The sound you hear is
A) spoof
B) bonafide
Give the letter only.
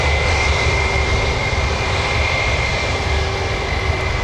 A